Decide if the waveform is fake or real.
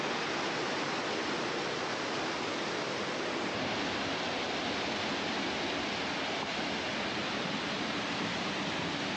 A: real